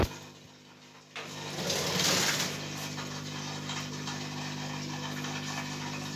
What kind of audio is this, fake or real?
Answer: real